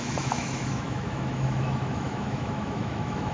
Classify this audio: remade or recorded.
remade